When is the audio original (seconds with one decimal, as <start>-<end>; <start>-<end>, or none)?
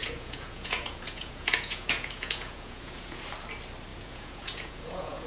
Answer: 3.2-3.9